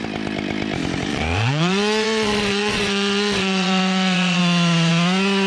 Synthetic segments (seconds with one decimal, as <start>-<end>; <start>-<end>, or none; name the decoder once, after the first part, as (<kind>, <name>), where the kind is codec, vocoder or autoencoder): 1.1-4.4 (vocoder, Vocos)